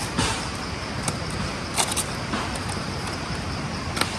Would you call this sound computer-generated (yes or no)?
no